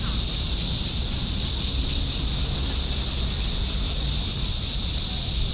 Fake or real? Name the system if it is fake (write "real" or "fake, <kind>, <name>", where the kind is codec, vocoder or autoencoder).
real